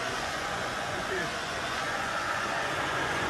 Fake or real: fake